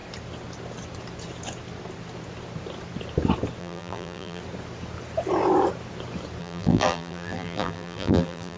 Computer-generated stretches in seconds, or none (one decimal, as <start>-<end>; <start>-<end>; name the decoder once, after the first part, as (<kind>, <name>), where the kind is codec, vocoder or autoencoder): 3.6-4.4 (vocoder, BigVGAN v2); 6.4-8.6